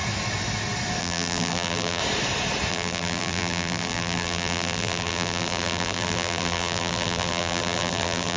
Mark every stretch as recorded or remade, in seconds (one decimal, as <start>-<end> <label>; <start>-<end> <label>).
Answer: 0.0-1.0 recorded; 1.0-2.0 remade; 2.0-2.7 recorded; 2.7-8.4 remade